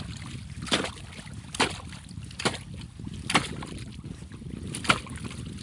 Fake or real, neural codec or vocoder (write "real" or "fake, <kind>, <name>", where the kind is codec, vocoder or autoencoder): real